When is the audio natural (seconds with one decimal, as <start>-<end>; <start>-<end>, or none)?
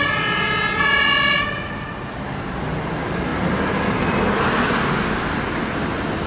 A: 0.0-0.9; 1.9-6.3